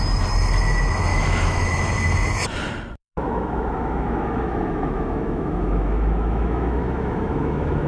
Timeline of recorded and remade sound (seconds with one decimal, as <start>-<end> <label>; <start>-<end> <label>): 0.0-1.1 recorded; 1.1-1.8 remade; 1.8-3.0 recorded; 3.0-7.9 remade